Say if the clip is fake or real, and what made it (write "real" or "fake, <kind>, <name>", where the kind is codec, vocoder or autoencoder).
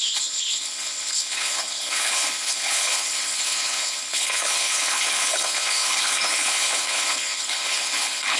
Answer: fake, codec, HILCodec